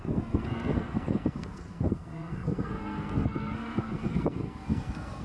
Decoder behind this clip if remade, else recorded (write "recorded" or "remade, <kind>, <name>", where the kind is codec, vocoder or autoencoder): remade, codec, SNAC